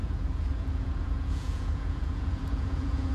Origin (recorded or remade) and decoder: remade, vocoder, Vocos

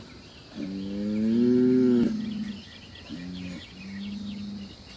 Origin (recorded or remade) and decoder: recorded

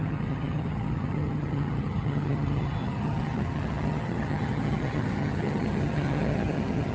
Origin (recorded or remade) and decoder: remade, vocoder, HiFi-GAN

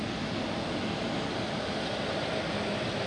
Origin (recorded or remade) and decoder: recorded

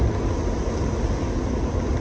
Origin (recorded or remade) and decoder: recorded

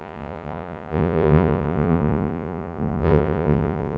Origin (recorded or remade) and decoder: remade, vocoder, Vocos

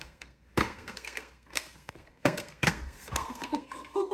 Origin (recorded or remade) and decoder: remade, codec, SNAC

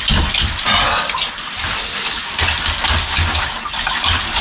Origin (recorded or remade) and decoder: recorded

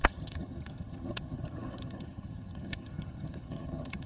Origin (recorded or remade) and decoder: remade, vocoder, HiFi-GAN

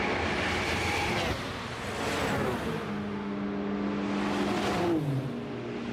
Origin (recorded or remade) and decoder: recorded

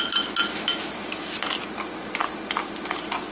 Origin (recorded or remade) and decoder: recorded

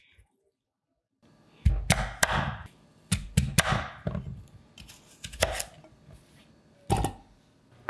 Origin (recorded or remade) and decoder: recorded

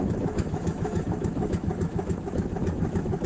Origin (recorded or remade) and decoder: remade, autoencoder, DAC-VAE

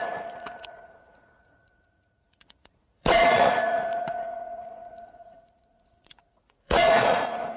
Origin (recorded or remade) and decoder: remade, vocoder, Vocos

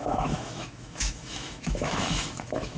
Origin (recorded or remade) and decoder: remade, autoencoder, DAC-VAE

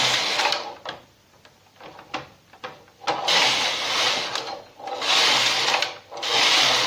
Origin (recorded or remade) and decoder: recorded